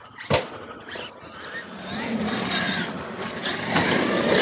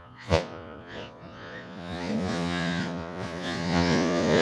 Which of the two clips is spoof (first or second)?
second